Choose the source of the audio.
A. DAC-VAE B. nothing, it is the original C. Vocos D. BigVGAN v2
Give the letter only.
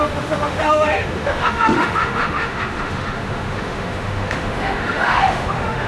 A